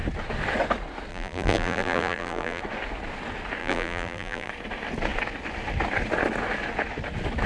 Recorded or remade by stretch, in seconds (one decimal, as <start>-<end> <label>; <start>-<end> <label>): 0.0-1.1 recorded; 1.1-2.6 remade; 2.6-3.6 recorded; 3.6-4.5 remade; 4.5-7.5 recorded